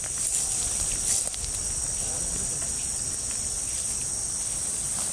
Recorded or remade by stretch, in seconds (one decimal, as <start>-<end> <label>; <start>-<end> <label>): 0.0-5.1 recorded